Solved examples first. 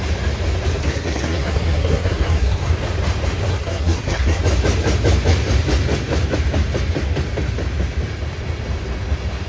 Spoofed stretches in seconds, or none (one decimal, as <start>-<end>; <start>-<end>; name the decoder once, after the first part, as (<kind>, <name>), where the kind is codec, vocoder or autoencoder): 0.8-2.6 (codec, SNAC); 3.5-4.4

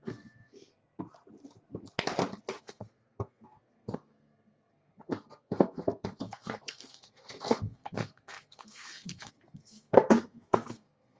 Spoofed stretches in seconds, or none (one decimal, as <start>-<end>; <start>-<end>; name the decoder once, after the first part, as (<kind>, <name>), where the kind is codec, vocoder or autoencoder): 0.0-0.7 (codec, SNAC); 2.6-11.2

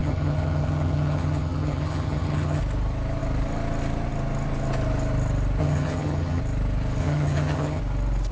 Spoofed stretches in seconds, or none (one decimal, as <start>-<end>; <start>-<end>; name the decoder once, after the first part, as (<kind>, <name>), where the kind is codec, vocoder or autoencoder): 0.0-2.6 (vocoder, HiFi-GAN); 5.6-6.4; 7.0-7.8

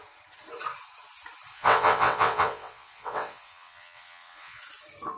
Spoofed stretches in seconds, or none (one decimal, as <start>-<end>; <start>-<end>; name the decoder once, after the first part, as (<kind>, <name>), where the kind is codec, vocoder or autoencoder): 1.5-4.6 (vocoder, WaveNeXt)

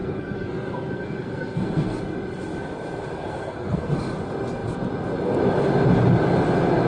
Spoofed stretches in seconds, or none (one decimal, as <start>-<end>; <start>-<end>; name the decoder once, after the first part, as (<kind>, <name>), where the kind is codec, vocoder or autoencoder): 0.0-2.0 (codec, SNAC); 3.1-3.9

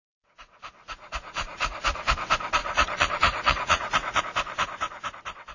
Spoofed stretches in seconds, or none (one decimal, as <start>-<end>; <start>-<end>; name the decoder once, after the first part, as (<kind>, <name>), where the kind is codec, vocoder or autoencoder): 0.8-2.0 (vocoder, Vocos); 2.6-4.2

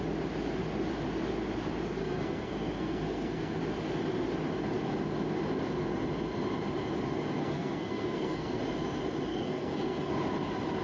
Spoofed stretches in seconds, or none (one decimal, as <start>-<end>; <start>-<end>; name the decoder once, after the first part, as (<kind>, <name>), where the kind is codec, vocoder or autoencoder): 2.0-3.6 (codec, SNAC); 7.4-8.6; 9.3-10.1

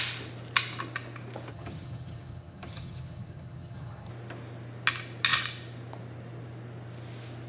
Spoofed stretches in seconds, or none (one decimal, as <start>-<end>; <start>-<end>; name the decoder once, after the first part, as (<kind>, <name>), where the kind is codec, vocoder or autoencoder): 1.5-4.1 (vocoder, HiFi-GAN)